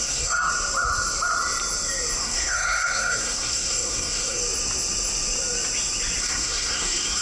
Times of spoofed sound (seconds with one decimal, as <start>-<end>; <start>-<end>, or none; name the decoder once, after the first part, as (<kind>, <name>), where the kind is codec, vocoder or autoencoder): 0.0-0.5 (codec, SNAC); 2.2-4.4; 6.2-7.2